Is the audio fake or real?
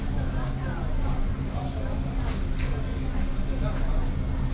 real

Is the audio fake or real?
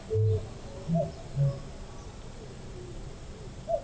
real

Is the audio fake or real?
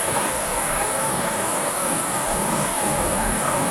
fake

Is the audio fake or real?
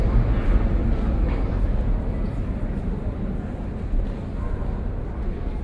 real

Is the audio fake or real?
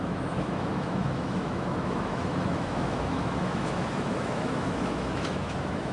fake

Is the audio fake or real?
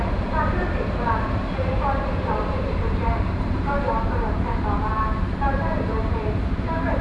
fake